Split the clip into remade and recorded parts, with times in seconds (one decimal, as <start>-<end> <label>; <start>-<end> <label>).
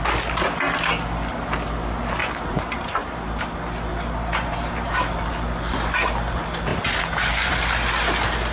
0.0-2.2 recorded; 2.2-3.5 remade; 3.5-3.9 recorded; 3.9-4.9 remade; 4.9-6.7 recorded; 6.7-7.5 remade; 7.5-8.5 recorded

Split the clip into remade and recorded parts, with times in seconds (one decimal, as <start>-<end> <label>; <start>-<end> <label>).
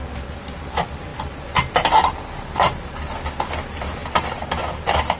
0.0-5.2 recorded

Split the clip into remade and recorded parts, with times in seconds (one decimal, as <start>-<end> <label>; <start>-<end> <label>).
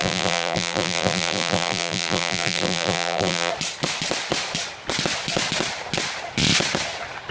0.0-3.5 remade; 3.5-7.3 recorded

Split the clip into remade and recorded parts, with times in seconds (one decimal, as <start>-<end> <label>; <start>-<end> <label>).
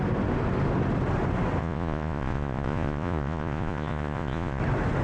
0.0-1.6 recorded; 1.6-4.6 remade; 4.6-5.0 recorded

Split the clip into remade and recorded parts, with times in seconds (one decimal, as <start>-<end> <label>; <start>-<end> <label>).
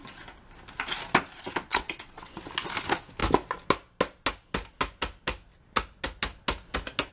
0.0-1.7 recorded; 1.7-2.4 remade; 2.4-7.1 recorded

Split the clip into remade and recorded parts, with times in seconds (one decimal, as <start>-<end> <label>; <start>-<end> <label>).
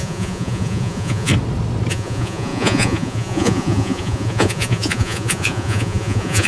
0.0-1.3 remade; 1.3-1.9 recorded; 1.9-6.5 remade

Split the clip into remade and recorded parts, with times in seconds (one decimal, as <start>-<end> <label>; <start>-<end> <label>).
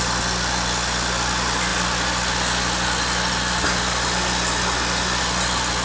0.0-5.8 recorded